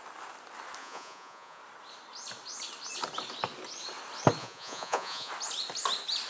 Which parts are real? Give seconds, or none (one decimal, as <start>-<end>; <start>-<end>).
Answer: 0.0-0.8; 1.6-4.4; 5.3-6.3